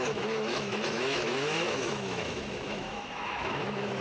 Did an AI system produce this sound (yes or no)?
yes